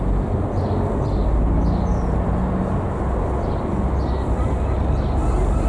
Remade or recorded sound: recorded